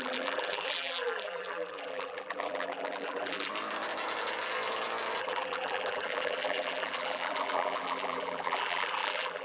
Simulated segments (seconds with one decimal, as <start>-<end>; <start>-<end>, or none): 0.0-3.5; 5.2-9.4